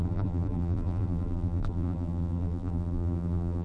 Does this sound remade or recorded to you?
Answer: remade